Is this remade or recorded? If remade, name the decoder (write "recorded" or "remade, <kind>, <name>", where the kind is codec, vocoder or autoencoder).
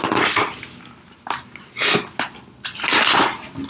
recorded